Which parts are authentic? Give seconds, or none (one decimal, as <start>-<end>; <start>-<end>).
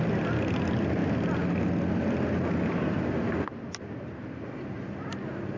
0.0-5.6